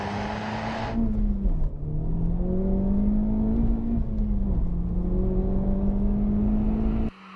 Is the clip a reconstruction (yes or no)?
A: no